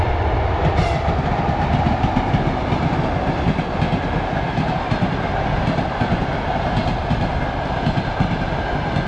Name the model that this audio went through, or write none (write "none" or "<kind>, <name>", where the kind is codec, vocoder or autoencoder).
none